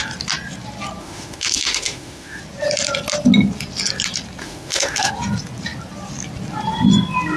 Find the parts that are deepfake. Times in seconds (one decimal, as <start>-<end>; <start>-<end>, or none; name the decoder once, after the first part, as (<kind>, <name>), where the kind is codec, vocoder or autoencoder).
1.0-2.4 (autoencoder, DAC-VAE); 4.4-5.1